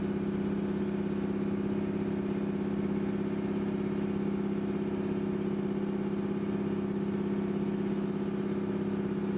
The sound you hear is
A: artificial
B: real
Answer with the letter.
B